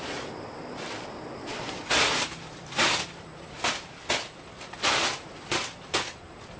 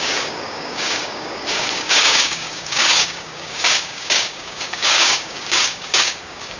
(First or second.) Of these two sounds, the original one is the first